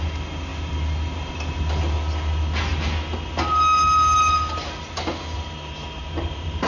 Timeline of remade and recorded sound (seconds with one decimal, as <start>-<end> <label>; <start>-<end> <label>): 0.0-6.7 recorded